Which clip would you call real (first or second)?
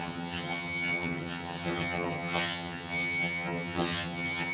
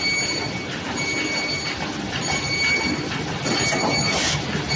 second